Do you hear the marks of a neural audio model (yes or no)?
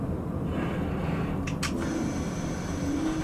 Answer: no